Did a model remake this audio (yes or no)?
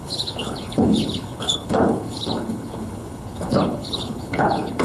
yes